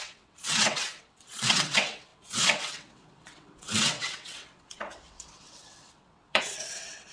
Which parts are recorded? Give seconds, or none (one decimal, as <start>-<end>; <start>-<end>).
none